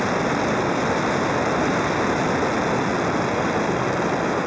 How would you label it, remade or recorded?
recorded